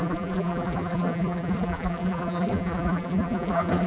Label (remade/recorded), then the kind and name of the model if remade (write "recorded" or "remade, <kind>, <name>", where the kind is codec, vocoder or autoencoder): remade, vocoder, BigVGAN v2